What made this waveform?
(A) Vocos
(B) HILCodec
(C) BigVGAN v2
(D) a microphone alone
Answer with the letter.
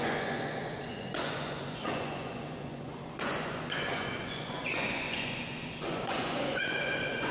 A